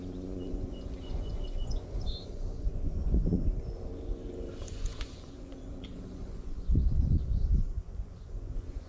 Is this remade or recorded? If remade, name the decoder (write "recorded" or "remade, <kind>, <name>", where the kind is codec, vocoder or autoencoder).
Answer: remade, vocoder, Vocos